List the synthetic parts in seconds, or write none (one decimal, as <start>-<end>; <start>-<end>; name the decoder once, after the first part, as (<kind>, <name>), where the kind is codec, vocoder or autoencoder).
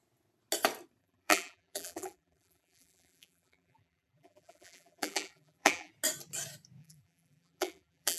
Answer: 1.0-5.9 (vocoder, BigVGAN v2); 6.8-8.2